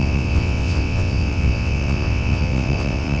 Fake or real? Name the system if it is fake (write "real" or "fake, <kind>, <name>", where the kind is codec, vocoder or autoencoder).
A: fake, vocoder, WaveNeXt